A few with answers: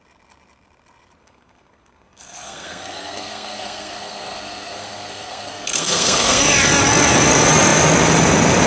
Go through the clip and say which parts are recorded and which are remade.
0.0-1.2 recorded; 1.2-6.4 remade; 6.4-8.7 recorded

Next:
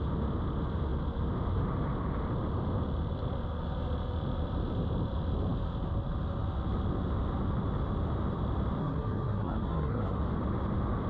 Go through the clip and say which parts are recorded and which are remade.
0.0-8.8 recorded; 8.8-10.2 remade; 10.2-11.1 recorded

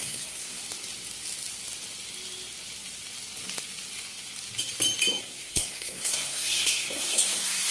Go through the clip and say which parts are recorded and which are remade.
0.0-0.6 remade; 0.6-5.2 recorded; 5.2-7.7 remade